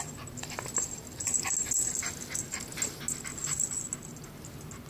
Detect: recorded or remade recorded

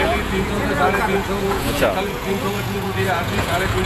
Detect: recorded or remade remade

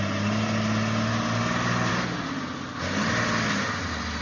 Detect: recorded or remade recorded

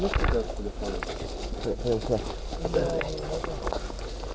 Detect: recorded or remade recorded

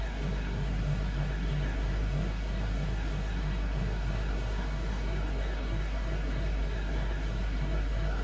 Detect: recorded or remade remade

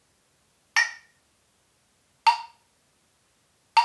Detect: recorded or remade recorded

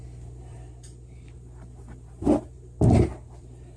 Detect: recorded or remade remade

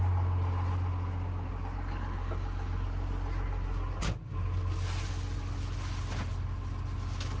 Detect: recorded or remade recorded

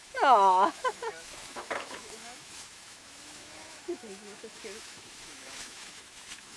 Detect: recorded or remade remade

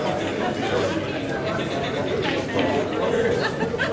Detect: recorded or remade recorded